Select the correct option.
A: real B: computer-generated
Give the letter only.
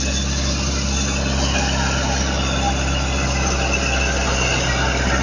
A